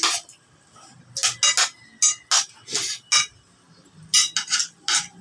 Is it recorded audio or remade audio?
recorded